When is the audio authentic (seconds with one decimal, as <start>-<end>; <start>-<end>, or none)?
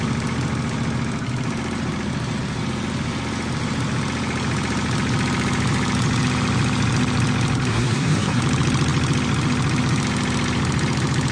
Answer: 0.0-7.7; 8.4-11.3